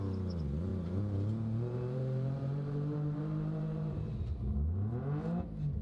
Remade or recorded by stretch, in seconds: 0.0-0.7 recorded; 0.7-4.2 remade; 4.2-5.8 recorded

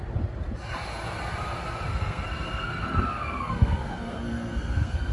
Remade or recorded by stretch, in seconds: 0.0-1.9 recorded; 1.9-5.1 remade